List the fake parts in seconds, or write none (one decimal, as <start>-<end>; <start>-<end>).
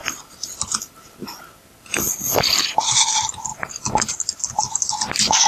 2.5-3.5; 4.1-5.5